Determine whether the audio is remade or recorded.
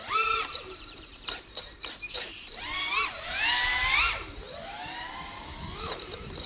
remade